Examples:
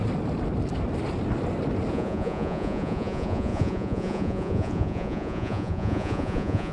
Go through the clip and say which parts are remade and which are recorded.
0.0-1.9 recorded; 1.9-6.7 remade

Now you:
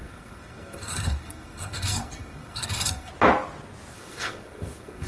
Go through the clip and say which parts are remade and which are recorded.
0.0-3.1 remade; 3.1-3.9 recorded; 3.9-5.1 remade

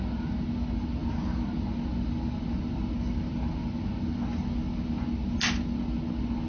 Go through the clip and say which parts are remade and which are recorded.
0.0-6.5 recorded

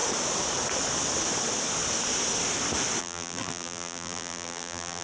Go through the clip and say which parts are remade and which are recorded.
0.0-3.0 recorded; 3.0-5.0 remade